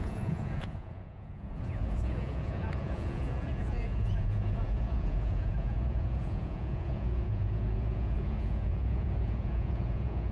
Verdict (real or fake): fake